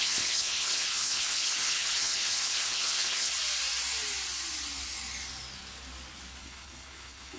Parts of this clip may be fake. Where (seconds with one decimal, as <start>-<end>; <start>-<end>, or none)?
0.0-3.3; 6.4-7.4